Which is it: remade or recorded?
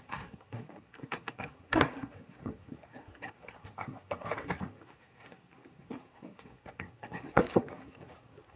remade